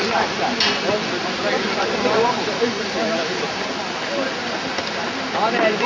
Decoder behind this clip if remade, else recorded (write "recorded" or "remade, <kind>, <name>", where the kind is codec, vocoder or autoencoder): recorded